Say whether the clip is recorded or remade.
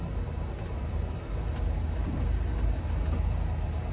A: recorded